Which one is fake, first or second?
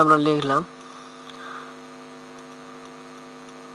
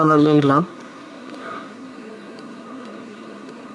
second